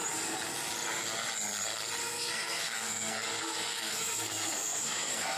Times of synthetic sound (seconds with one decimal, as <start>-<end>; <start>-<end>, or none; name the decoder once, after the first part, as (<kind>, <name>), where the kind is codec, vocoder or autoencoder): 2.0-5.4 (codec, SNAC)